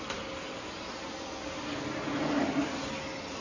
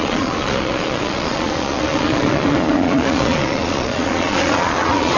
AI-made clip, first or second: second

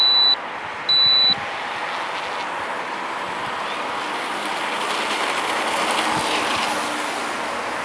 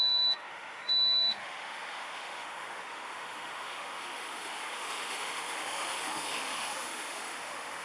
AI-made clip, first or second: second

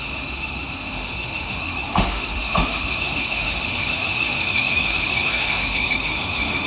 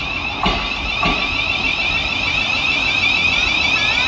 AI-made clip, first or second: first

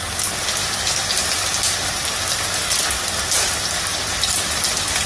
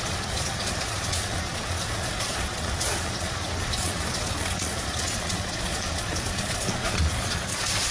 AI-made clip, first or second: second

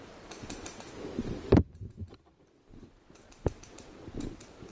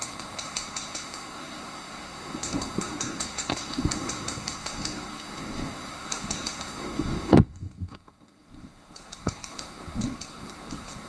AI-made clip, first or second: second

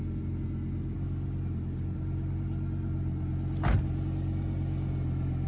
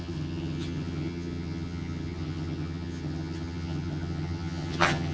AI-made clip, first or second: second